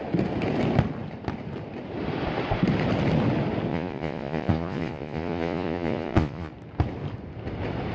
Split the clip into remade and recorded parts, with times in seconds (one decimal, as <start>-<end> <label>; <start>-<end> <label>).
0.0-3.7 recorded; 3.7-6.5 remade; 6.5-7.9 recorded